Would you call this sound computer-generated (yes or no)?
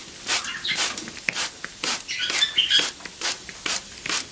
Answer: no